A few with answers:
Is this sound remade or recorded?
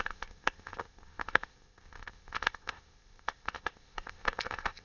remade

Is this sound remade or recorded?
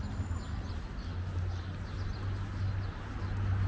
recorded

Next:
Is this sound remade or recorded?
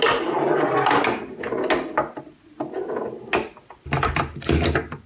recorded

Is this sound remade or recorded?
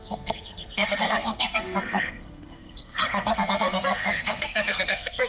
remade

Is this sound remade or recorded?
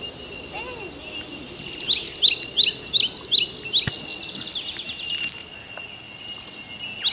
recorded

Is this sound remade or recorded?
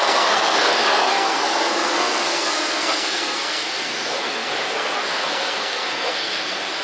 remade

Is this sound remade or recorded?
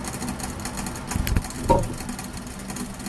recorded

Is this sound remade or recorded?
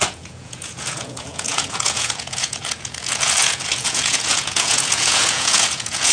remade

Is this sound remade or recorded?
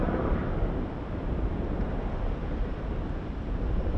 recorded